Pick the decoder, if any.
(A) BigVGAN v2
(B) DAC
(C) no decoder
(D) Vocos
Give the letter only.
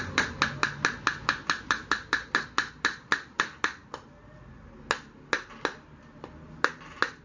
C